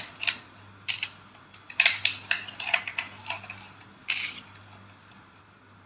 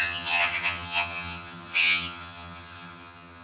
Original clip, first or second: first